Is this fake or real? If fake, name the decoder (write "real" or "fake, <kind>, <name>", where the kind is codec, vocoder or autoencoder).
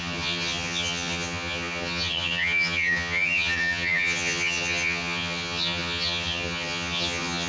fake, vocoder, HiFi-GAN